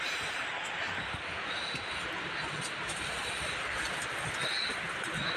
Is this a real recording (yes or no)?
yes